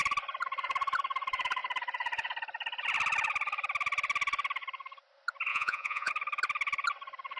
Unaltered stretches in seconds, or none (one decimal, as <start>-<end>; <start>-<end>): 0.0-5.5; 6.1-7.4

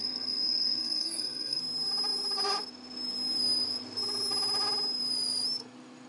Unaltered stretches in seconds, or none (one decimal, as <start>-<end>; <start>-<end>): 1.6-6.1

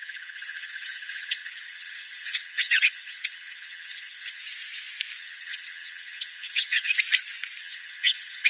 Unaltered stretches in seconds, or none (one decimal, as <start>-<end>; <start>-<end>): 4.4-5.2; 6.9-7.6